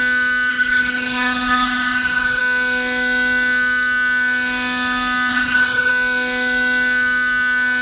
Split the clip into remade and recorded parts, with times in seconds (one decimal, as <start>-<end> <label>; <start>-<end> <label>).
0.0-0.5 recorded; 0.5-2.4 remade; 2.4-5.3 recorded; 5.3-5.9 remade; 5.9-7.8 recorded